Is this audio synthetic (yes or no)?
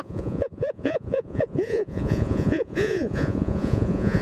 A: yes